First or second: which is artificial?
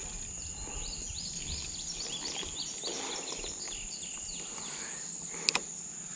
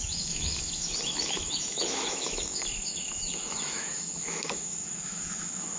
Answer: second